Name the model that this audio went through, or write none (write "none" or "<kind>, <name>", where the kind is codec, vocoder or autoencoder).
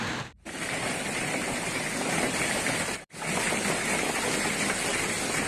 none